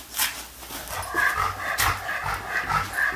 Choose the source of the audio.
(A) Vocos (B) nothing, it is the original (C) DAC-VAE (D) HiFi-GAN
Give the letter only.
B